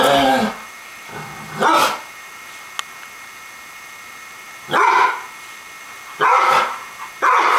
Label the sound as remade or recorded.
recorded